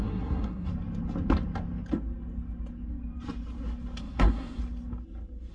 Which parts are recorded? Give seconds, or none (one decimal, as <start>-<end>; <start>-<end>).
0.7-4.0; 4.6-5.5